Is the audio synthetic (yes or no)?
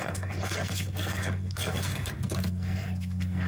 yes